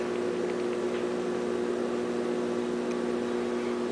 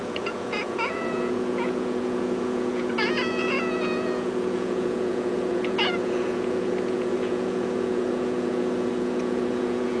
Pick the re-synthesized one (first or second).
second